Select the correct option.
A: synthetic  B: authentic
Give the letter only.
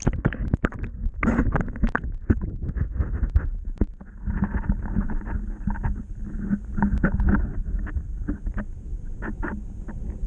B